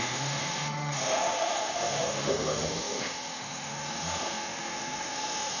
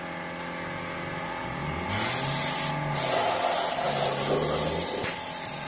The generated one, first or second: first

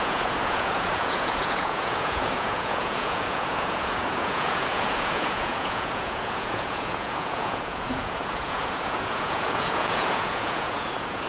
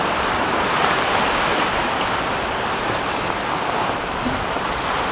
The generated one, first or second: first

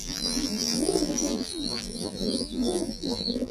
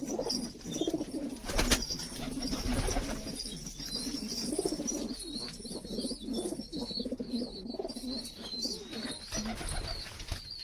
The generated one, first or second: first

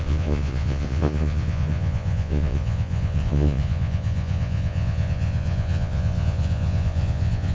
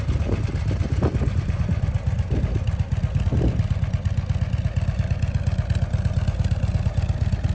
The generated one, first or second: first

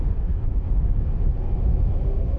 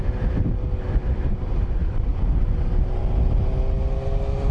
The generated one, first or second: first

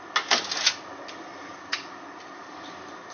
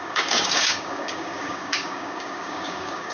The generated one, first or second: second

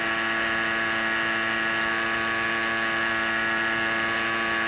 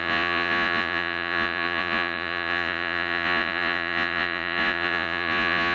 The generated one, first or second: second